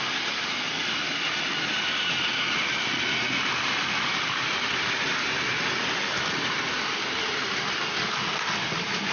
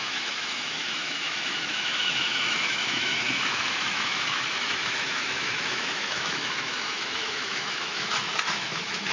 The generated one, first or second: second